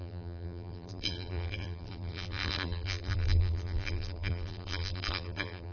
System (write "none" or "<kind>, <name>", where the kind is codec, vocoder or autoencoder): vocoder, BigVGAN v2